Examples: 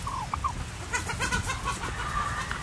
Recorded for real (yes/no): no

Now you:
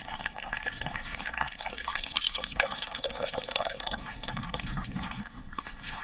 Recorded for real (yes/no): no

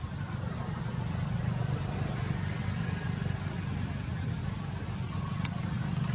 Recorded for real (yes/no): yes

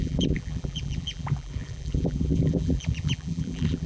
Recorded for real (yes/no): no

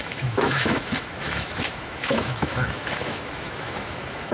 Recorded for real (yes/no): no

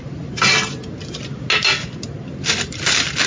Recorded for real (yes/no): yes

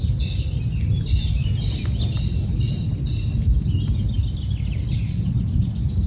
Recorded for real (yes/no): yes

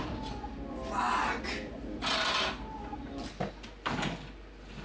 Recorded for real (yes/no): yes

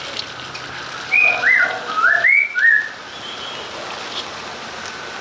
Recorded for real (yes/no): yes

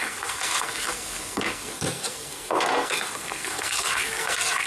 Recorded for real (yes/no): no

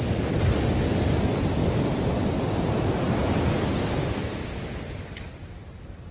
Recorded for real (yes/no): yes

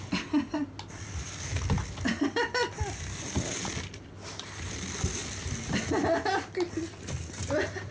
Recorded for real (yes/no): yes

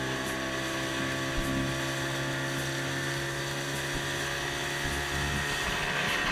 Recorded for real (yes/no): yes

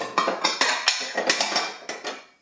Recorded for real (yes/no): yes